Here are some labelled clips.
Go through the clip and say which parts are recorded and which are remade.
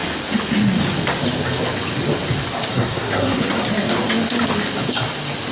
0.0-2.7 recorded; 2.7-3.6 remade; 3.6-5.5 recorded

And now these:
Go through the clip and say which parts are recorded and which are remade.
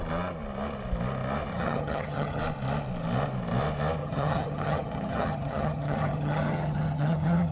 0.0-1.5 recorded; 1.5-2.4 remade; 2.4-4.0 recorded; 4.0-7.5 remade